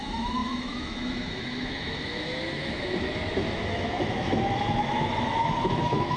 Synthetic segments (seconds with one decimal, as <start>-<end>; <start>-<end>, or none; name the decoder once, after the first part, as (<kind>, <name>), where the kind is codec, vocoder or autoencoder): 0.0-6.2 (autoencoder, DAC-VAE)